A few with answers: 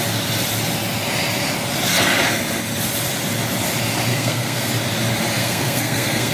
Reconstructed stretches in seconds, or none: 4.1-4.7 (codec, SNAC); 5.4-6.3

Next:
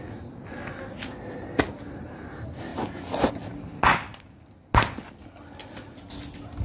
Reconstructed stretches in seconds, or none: none

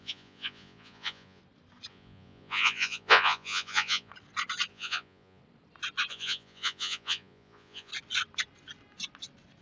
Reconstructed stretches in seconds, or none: 0.0-1.4 (vocoder, Vocos); 1.9-4.1; 4.7-5.4; 6.1-7.9